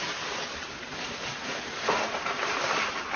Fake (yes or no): yes